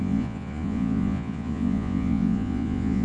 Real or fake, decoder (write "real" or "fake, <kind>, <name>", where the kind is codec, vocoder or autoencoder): fake, vocoder, Vocos